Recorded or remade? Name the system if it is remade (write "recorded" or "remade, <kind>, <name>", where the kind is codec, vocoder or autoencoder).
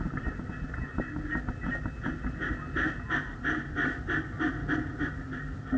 recorded